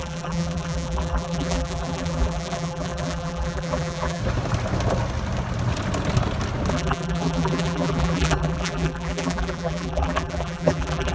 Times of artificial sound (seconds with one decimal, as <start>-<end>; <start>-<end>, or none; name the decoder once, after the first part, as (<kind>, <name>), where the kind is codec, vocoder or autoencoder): 0.0-4.2 (vocoder, BigVGAN v2); 6.7-11.1